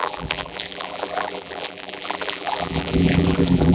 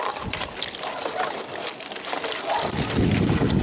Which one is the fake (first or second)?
first